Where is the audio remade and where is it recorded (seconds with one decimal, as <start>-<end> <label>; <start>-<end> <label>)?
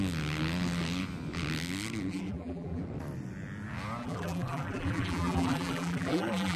0.0-2.1 recorded; 2.1-2.8 remade; 2.8-4.0 recorded; 4.0-6.6 remade